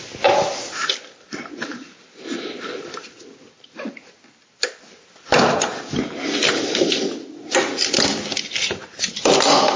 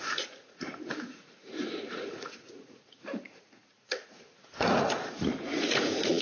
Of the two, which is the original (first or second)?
first